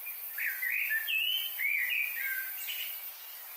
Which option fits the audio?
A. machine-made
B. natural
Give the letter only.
B